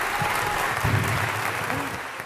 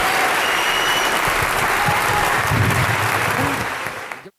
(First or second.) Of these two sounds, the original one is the first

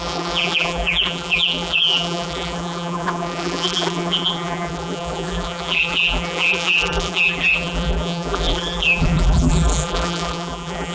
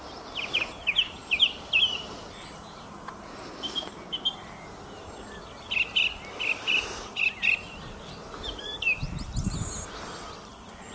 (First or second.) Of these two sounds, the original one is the second